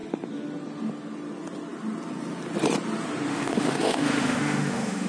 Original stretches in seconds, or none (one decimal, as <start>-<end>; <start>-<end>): 0.0-3.3